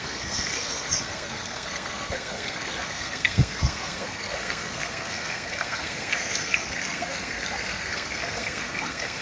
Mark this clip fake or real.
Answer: fake